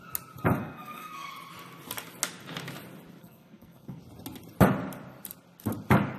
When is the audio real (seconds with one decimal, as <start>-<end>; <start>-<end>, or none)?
0.0-0.6; 1.3-3.2; 4.0-6.2